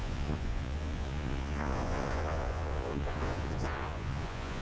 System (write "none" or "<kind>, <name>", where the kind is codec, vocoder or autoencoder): vocoder, Vocos